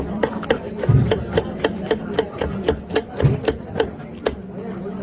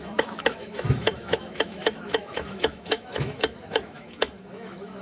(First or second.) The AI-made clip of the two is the second